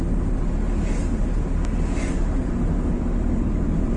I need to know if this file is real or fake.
real